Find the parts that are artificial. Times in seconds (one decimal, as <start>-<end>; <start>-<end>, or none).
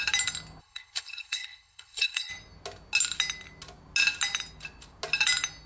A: 0.6-2.3